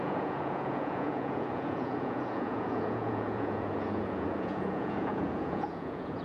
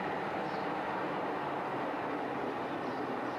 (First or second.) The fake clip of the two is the first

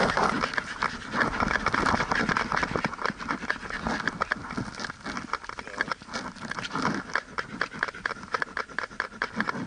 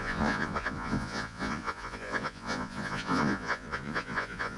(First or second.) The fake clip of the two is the second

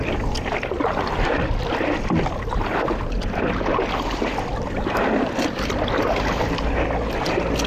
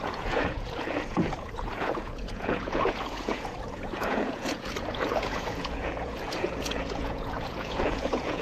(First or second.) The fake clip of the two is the second